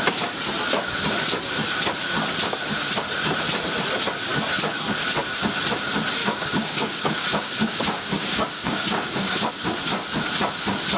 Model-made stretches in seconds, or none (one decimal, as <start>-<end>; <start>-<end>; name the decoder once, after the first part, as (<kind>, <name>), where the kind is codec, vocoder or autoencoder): 6.2-9.5 (codec, DAC)